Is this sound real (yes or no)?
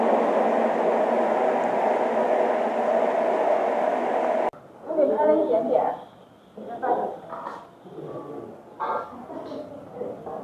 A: yes